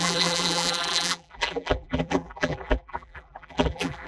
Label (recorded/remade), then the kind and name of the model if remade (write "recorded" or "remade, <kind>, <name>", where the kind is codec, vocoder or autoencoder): remade, vocoder, BigVGAN v2